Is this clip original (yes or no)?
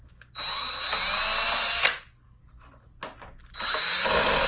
yes